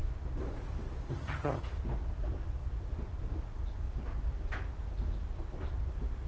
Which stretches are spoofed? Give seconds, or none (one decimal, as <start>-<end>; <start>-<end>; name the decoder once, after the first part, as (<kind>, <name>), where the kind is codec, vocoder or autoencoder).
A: 1.1-1.6 (vocoder, HiFi-GAN)